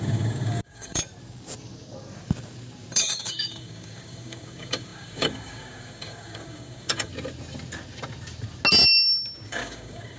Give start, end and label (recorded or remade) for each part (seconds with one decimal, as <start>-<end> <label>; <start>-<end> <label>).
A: 0.0-1.0 remade; 1.0-3.0 recorded; 3.0-7.1 remade; 7.1-9.5 recorded; 9.5-10.2 remade